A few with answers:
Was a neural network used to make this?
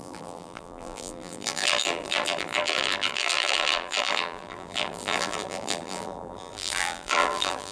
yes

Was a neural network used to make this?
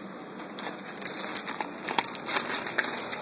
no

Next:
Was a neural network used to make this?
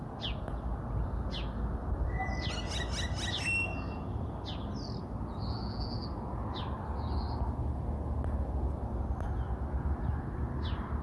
no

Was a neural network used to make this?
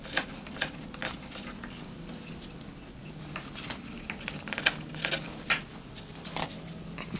no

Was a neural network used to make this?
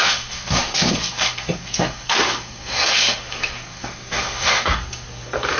yes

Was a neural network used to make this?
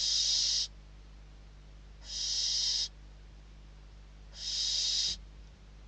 no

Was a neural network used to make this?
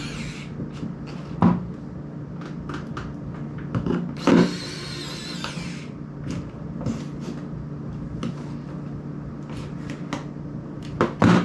no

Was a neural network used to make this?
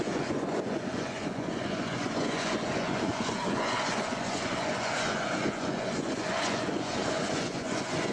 yes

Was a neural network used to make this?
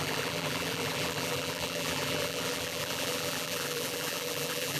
yes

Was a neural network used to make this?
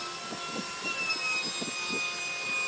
no